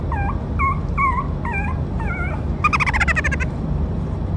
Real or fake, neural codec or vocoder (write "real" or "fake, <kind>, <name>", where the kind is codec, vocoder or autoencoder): real